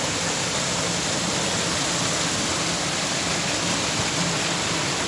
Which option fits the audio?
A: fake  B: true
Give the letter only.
B